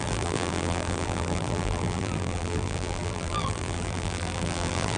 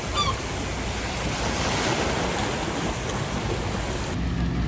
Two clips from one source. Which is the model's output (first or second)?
first